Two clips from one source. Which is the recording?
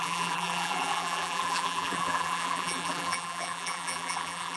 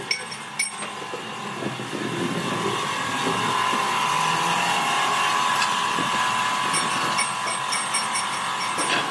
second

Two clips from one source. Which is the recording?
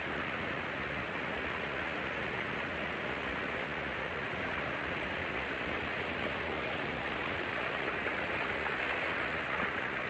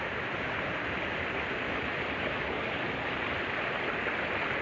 second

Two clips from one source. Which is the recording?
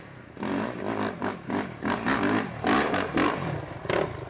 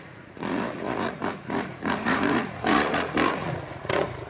first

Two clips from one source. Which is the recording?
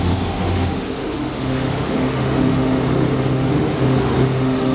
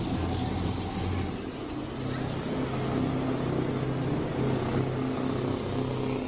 second